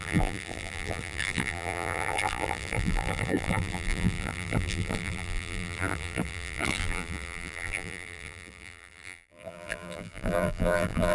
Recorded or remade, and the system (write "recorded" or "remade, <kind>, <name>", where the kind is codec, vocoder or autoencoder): remade, vocoder, BigVGAN v2